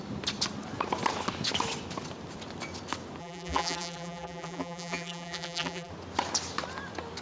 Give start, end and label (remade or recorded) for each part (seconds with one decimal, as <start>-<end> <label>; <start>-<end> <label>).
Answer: 0.0-3.2 recorded; 3.2-5.9 remade; 5.9-7.2 recorded